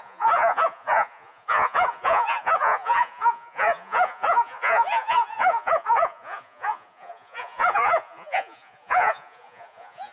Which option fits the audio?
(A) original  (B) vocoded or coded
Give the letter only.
B